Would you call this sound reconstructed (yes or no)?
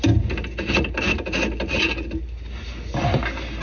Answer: no